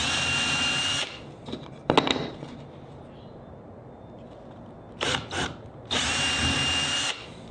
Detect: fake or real real